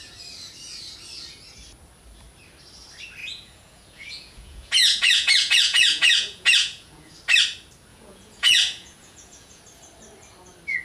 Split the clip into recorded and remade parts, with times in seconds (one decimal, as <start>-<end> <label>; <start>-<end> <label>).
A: 0.0-3.2 recorded; 3.2-7.1 remade; 7.1-7.9 recorded; 7.9-9.6 remade; 9.6-10.8 recorded